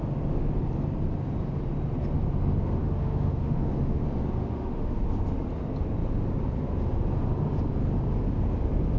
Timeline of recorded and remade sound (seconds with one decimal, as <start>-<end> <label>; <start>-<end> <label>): 0.0-2.8 recorded; 2.8-4.0 remade; 4.0-4.4 recorded; 4.4-5.1 remade; 5.1-9.0 recorded